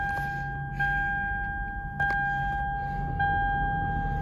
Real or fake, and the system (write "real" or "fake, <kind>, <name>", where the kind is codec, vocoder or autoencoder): real